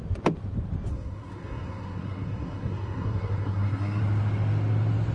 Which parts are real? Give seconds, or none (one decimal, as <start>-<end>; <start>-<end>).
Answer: 0.0-0.9; 4.0-5.1